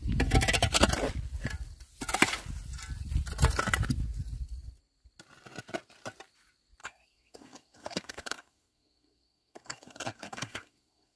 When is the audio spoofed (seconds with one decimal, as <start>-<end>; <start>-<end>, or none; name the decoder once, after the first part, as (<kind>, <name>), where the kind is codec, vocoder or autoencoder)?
6.8-11.2 (codec, SNAC)